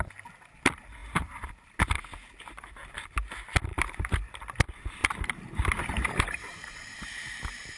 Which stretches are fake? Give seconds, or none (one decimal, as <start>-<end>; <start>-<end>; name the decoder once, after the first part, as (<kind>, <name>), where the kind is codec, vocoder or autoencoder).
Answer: 3.7-4.3 (vocoder, BigVGAN v2); 5.0-6.8